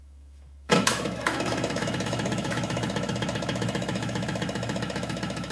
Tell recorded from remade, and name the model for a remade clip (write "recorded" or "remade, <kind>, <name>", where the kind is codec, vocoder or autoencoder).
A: remade, autoencoder, DAC-VAE